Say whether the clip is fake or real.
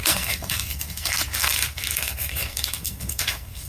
fake